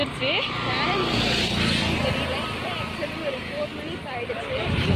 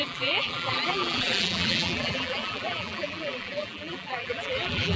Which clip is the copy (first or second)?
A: second